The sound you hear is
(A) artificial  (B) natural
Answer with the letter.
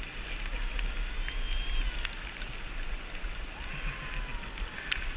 B